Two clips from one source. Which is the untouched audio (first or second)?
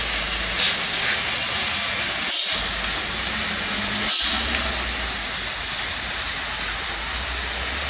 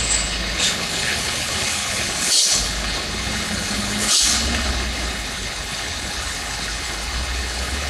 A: first